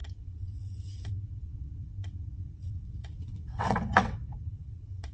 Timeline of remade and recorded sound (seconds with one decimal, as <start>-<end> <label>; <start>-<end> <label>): 0.0-5.1 remade